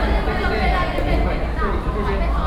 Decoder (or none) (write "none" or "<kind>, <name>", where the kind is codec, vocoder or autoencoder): none